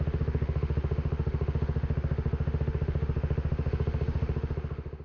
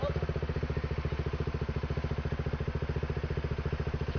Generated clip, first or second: first